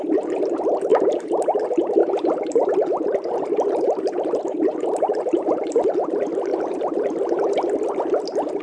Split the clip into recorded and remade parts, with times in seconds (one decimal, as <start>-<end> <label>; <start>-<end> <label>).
0.0-0.9 recorded; 0.9-1.6 remade; 1.6-2.0 recorded; 2.0-5.8 remade; 5.8-6.5 recorded; 6.5-7.3 remade; 7.3-8.6 recorded